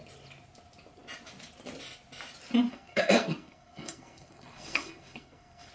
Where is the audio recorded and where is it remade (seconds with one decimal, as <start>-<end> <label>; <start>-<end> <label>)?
0.0-2.7 recorded; 2.7-5.7 remade